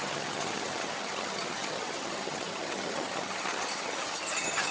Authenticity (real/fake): fake